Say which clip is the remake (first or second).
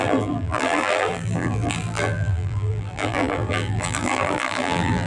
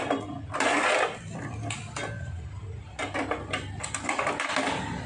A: first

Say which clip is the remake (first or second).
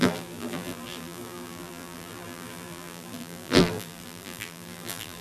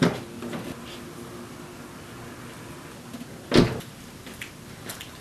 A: first